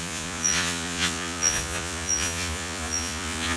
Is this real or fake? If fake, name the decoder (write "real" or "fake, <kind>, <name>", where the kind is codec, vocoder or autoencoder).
fake, vocoder, Vocos